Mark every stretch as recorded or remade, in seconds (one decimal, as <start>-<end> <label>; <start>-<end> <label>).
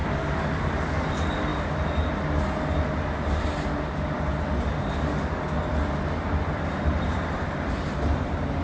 0.0-1.1 remade; 1.1-4.8 recorded; 4.8-5.5 remade; 5.5-8.6 recorded